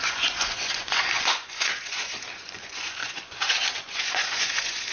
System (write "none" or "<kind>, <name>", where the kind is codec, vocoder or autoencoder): vocoder, Vocos